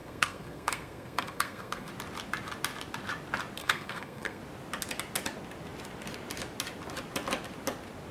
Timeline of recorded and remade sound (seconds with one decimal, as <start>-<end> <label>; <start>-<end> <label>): 0.0-1.9 remade; 1.9-3.6 recorded; 3.6-4.4 remade; 4.4-8.1 recorded